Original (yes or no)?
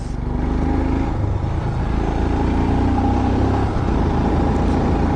yes